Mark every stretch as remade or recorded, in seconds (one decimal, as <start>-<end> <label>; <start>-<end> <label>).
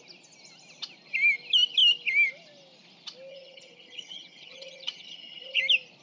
0.0-3.3 recorded; 3.3-5.6 remade; 5.6-6.0 recorded